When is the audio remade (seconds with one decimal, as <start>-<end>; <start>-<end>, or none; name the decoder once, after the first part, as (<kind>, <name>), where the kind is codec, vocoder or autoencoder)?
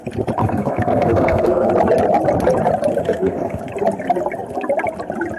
0.4-1.7 (codec, SNAC); 3.0-3.6